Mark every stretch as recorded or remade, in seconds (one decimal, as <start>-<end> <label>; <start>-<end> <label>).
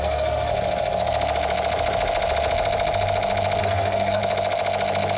0.0-0.5 remade; 0.5-3.6 recorded; 3.6-4.2 remade; 4.2-5.2 recorded